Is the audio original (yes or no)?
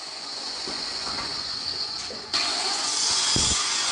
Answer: no